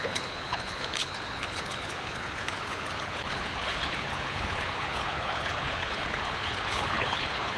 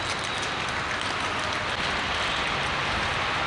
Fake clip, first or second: first